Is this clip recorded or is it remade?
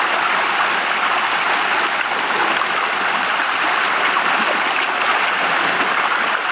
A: recorded